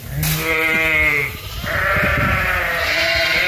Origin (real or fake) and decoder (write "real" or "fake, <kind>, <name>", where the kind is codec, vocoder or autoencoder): real